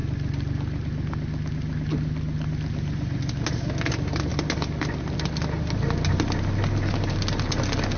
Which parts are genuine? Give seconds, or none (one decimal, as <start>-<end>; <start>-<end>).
0.0-8.0